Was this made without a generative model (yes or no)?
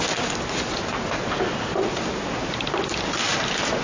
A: yes